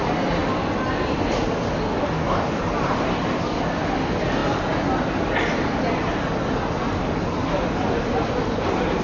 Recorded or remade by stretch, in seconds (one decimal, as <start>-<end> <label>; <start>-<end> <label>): 0.0-2.0 recorded; 2.0-2.6 remade; 2.6-9.0 recorded